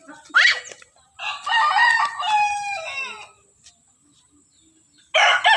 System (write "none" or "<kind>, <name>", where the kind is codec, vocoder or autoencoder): none